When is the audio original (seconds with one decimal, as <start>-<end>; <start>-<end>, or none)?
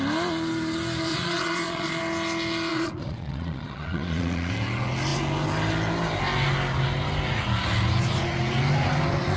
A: 0.0-1.1; 2.0-2.7; 4.5-9.4